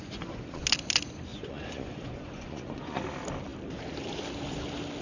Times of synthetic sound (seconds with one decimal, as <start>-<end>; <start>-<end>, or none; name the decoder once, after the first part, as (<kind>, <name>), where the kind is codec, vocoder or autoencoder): 0.0-0.6 (vocoder, Vocos); 1.3-3.0